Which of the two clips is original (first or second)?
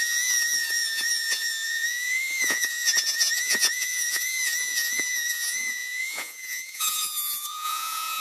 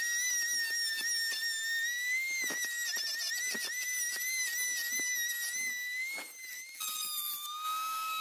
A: second